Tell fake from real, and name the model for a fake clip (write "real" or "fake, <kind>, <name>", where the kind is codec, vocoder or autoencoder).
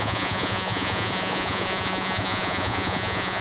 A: fake, vocoder, Vocos